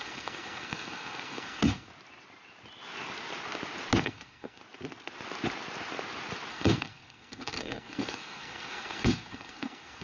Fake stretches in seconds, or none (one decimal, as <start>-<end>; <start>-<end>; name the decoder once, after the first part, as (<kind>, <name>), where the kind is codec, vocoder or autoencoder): 0.0-1.9 (codec, SNAC); 4.0-4.6; 6.5-10.0